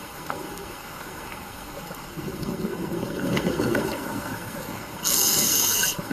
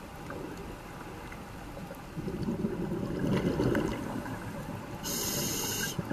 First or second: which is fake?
first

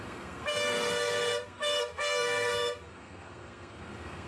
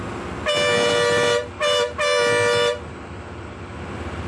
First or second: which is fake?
first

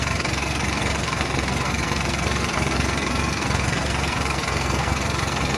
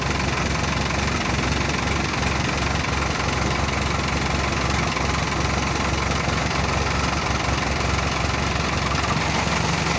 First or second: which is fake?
first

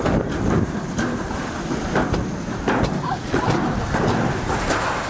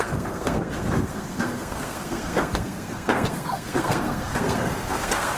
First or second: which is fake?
second